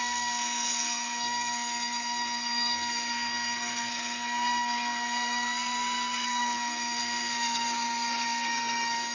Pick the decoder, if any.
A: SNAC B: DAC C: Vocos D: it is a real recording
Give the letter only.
A